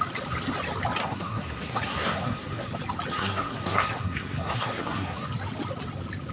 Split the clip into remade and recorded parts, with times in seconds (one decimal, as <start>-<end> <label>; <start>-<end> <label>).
0.0-1.0 recorded; 1.0-2.7 remade; 2.7-3.1 recorded; 3.1-5.3 remade; 5.3-6.3 recorded

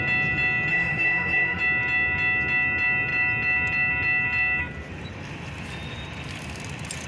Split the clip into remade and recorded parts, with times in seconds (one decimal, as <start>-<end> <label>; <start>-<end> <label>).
0.0-0.7 recorded; 0.7-1.6 remade; 1.6-7.1 recorded

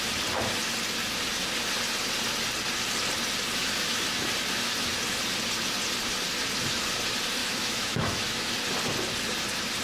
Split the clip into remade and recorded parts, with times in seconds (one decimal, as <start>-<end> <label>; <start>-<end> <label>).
0.0-3.6 recorded; 3.6-4.3 remade; 4.3-7.4 recorded; 7.4-8.5 remade; 8.5-9.8 recorded

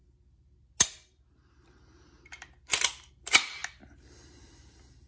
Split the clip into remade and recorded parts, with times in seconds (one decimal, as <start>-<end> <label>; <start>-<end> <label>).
0.0-5.1 recorded

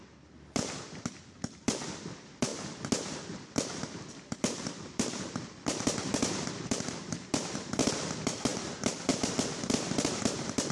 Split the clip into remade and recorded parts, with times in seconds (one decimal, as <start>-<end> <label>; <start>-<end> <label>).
0.0-2.5 remade; 2.5-4.1 recorded; 4.1-8.5 remade; 8.5-9.1 recorded; 9.1-10.7 remade

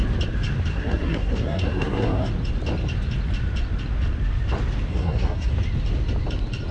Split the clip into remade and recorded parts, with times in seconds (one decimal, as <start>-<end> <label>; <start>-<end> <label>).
0.0-0.7 recorded; 0.7-2.3 remade; 2.3-4.9 recorded; 4.9-5.5 remade; 5.5-6.7 recorded

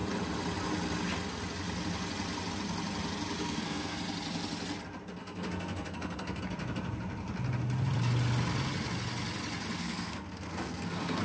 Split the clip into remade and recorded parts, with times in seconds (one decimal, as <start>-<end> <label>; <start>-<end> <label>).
0.0-3.4 recorded; 3.4-4.0 remade; 4.0-5.2 recorded; 5.2-6.4 remade; 6.4-9.8 recorded; 9.8-11.2 remade

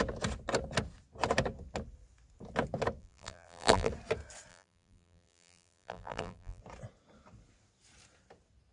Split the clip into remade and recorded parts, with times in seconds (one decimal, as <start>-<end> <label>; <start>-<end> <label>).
0.0-3.0 recorded; 3.0-3.9 remade; 3.9-4.5 recorded; 4.5-6.6 remade; 6.6-8.7 recorded